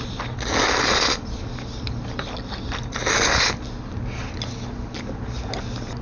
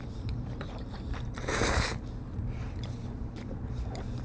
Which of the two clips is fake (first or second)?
second